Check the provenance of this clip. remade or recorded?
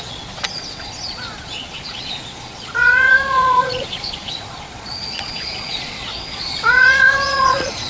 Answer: remade